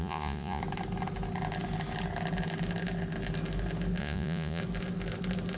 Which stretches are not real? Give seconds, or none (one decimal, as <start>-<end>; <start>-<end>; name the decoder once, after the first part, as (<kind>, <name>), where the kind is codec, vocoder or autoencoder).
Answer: 0.0-0.6 (vocoder, Vocos); 4.0-4.6